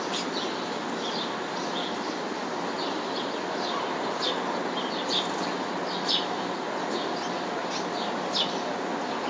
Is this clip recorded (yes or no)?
yes